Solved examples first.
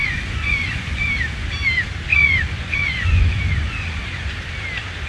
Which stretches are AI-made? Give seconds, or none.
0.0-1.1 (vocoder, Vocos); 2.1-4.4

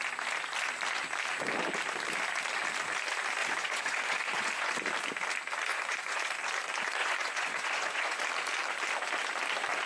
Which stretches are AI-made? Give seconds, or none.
3.4-4.7 (vocoder, Vocos); 5.7-6.2; 7.0-8.2

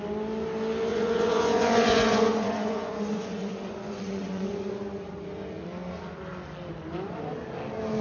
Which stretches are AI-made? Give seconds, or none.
0.9-4.7 (vocoder, Vocos)

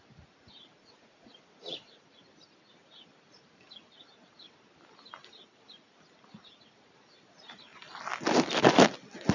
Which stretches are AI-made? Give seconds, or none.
0.8-2.0 (vocoder, Vocos)